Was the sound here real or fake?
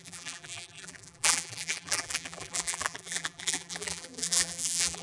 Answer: fake